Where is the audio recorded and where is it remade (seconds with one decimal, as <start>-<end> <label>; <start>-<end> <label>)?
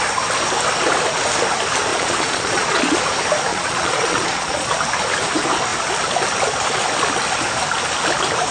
0.0-1.9 recorded; 1.9-3.0 remade; 3.0-3.5 recorded; 3.5-4.8 remade; 4.8-8.5 recorded